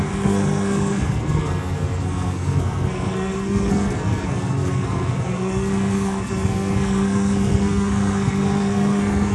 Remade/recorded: remade